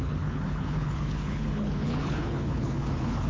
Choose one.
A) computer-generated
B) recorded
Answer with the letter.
A